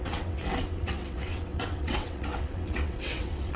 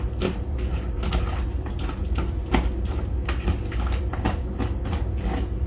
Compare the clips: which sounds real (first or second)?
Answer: second